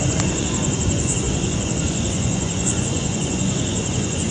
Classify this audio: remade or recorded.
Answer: remade